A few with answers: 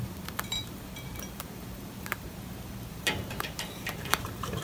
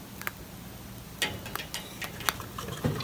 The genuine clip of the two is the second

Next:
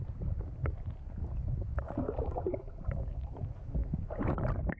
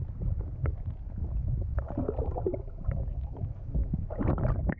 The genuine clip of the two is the second